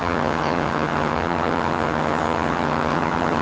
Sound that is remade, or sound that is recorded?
remade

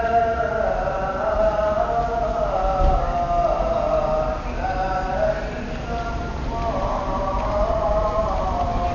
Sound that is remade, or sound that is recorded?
recorded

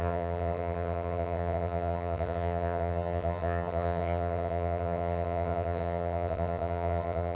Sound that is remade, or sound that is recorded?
remade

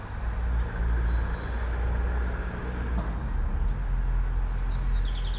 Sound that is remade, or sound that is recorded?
recorded